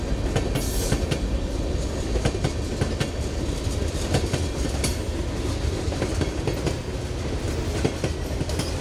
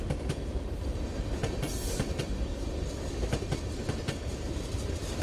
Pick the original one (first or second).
first